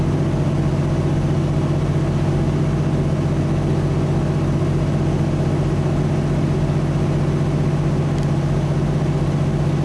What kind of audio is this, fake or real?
real